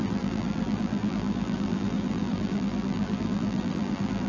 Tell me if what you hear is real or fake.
fake